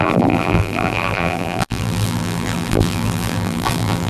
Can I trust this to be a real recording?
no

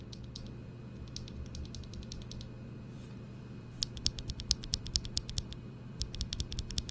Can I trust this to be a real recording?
no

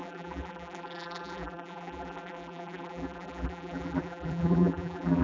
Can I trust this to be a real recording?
no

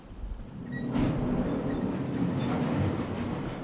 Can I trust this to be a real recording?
yes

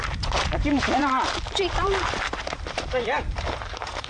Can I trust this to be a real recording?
no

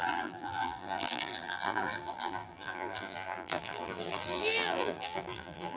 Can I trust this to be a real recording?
no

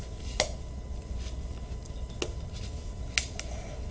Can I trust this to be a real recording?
yes